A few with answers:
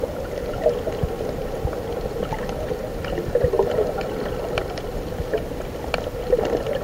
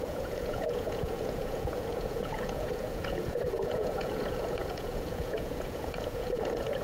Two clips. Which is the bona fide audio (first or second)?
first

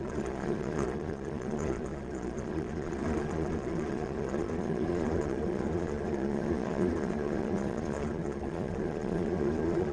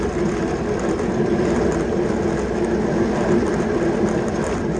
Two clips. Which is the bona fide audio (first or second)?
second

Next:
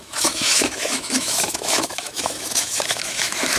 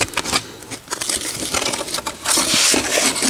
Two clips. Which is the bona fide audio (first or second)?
second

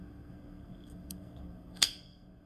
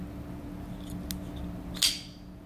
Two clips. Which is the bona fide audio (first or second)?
second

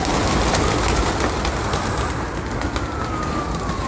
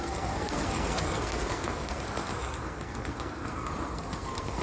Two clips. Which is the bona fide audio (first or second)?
first